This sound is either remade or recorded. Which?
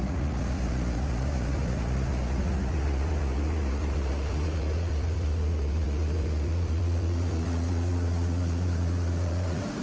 remade